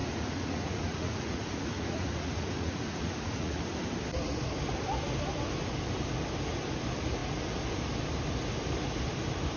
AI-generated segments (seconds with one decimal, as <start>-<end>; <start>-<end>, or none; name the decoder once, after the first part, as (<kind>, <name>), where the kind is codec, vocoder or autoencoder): 0.0-3.6 (vocoder, Vocos)